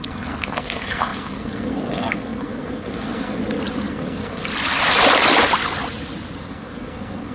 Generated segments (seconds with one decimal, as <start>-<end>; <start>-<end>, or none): 0.0-3.4; 3.9-4.4; 6.5-7.3